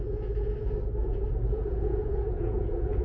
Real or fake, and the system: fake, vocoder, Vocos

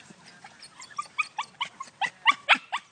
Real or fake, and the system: real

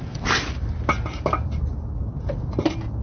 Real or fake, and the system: real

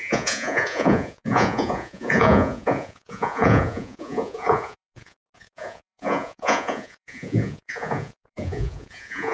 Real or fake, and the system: fake, vocoder, Vocos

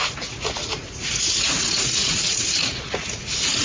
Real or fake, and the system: fake, vocoder, Vocos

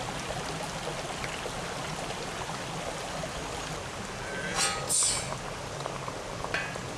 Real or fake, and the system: real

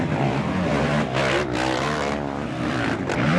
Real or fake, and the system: real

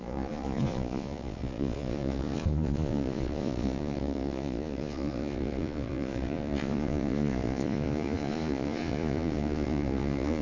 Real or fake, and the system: fake, vocoder, Vocos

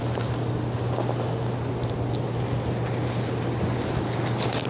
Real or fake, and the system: real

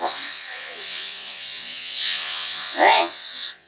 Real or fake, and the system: fake, vocoder, Vocos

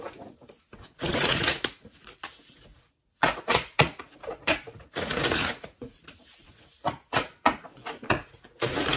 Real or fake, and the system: fake, vocoder, Vocos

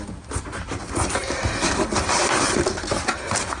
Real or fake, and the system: real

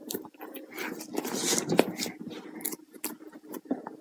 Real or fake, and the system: real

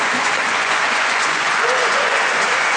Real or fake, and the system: fake, vocoder, Vocos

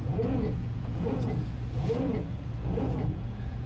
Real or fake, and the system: fake, vocoder, Vocos